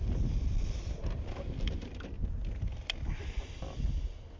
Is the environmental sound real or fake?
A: real